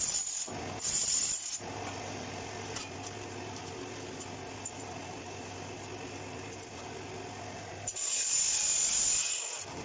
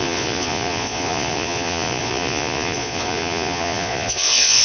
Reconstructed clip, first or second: second